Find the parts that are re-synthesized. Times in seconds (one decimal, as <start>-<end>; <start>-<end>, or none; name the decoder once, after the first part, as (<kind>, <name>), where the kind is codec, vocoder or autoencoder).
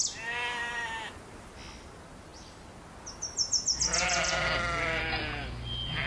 0.0-1.1 (vocoder, BigVGAN v2)